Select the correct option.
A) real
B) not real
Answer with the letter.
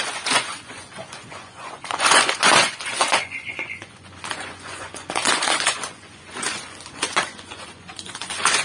B